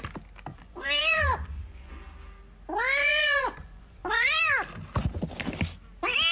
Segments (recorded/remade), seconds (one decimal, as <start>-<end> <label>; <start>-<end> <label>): 0.0-0.5 recorded; 0.5-1.9 remade; 1.9-3.0 recorded; 3.0-4.4 remade; 4.4-6.3 recorded